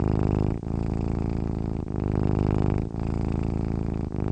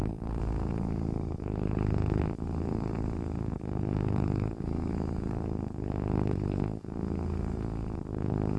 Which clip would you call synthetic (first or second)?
second